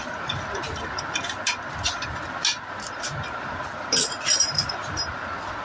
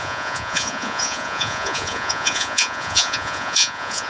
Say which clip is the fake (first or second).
second